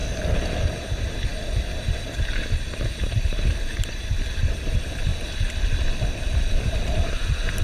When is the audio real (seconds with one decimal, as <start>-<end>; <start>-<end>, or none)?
0.0-0.7; 5.1-6.0